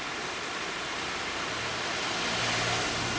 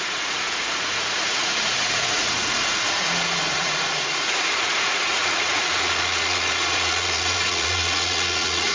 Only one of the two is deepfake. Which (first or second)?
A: second